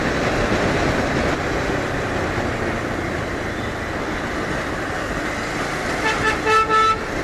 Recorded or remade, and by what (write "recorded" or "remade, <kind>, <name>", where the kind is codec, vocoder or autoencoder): recorded